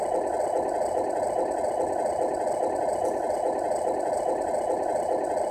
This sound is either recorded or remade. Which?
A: recorded